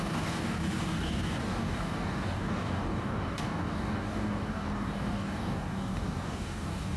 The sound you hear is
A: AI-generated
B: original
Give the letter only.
A